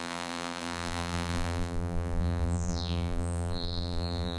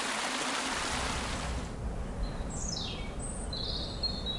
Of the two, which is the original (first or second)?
second